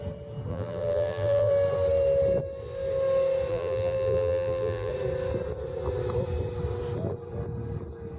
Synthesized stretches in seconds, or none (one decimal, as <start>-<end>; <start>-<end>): 0.5-1.5; 3.5-4.9